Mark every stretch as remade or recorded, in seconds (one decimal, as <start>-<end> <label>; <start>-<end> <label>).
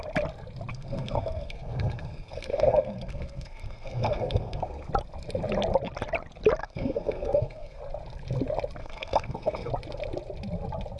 0.0-0.7 recorded; 0.7-4.9 remade; 4.9-6.6 recorded; 6.6-7.8 remade; 7.8-8.8 recorded; 8.8-9.7 remade; 9.7-11.0 recorded